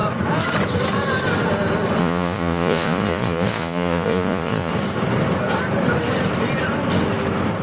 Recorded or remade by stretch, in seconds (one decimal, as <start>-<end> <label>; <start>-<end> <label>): 0.0-2.0 recorded; 2.0-4.7 remade; 4.7-7.6 recorded